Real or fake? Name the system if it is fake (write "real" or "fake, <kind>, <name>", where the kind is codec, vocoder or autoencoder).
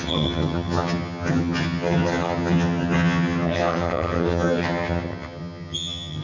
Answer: fake, vocoder, HiFi-GAN